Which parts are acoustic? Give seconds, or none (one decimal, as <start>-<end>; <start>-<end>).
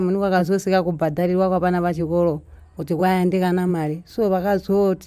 0.0-0.4; 2.0-3.0; 3.7-5.1